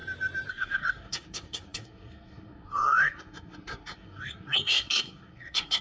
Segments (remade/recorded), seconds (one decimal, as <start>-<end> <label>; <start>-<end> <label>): 0.0-0.5 recorded; 0.5-5.8 remade